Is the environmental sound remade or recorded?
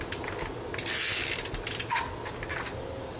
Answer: recorded